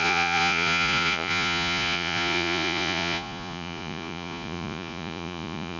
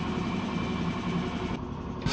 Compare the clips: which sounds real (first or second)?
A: second